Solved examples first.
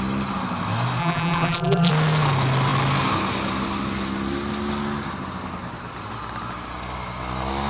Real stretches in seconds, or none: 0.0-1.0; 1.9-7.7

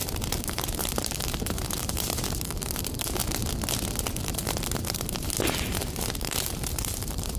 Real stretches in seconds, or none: 3.2-4.2

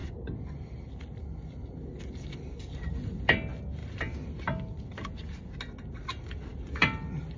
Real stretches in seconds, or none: 0.0-7.4

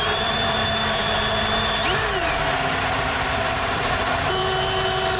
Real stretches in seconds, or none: 0.6-3.0; 4.4-5.2

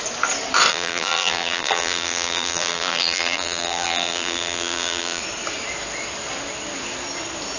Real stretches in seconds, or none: 0.0-0.7; 5.2-7.6

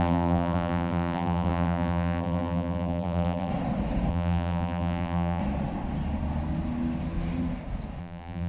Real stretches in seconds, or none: 3.5-4.1; 5.4-8.0

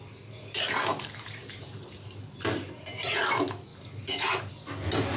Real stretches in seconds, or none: 0.0-0.9; 3.3-3.7; 4.5-5.2